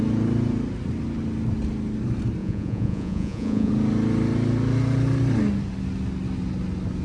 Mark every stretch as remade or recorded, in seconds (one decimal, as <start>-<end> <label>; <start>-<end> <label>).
0.0-2.4 recorded; 2.4-3.7 remade; 3.7-7.0 recorded